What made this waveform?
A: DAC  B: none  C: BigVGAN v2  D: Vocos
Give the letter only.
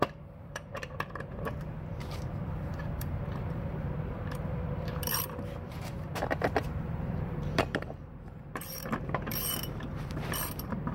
C